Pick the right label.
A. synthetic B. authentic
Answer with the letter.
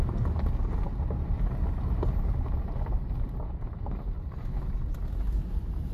B